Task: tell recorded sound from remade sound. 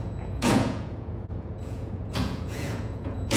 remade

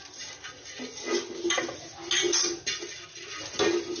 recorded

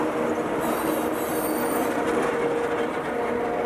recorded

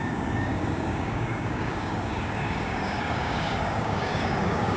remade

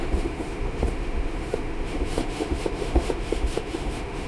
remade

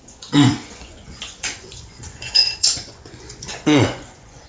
remade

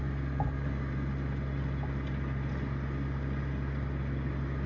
recorded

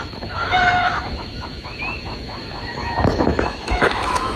remade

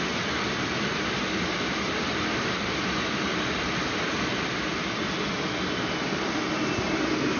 recorded